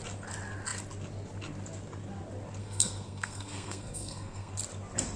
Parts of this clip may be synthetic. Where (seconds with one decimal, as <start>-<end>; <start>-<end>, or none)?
2.6-4.5